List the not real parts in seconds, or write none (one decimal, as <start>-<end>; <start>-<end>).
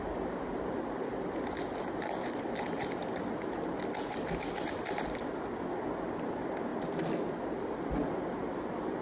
none